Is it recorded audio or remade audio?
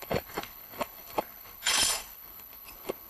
remade